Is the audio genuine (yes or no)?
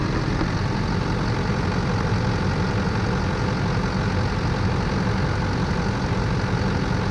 yes